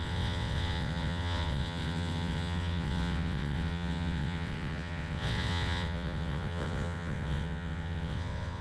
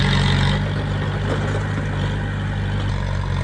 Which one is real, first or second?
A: second